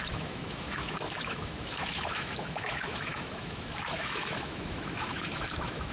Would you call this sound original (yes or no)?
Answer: no